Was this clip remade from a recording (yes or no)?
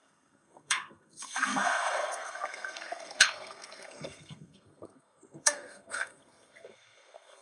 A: yes